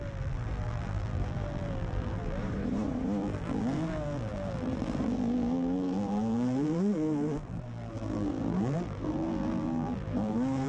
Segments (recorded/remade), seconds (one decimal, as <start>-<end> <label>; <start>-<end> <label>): 0.0-2.4 remade; 2.4-3.2 recorded; 3.2-10.7 remade